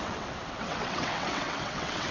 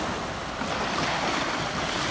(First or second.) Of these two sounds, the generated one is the first